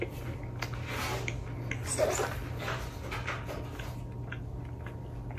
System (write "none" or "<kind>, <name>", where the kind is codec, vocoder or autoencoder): none